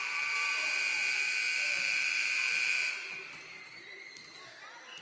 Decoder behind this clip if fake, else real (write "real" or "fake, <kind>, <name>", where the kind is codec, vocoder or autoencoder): fake, vocoder, BigVGAN v2